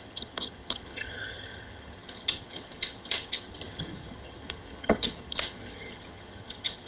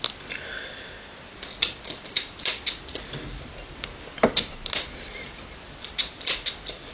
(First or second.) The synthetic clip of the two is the first